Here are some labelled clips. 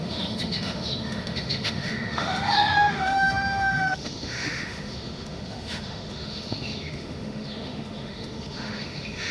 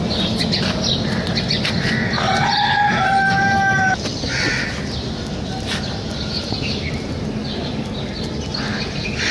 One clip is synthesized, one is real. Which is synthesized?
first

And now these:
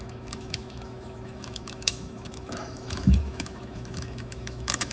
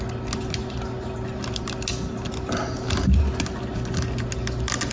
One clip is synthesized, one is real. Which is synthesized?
first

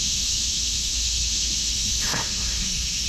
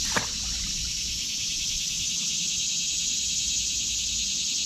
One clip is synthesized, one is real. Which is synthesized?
first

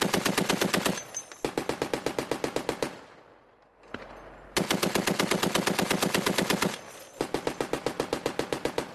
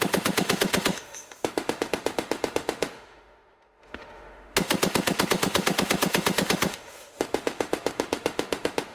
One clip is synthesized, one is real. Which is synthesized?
second